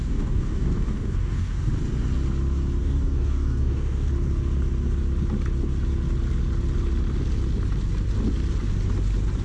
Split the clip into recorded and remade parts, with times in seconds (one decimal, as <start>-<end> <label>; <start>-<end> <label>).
0.0-1.7 remade; 1.7-2.8 recorded; 2.8-4.1 remade; 4.1-9.4 recorded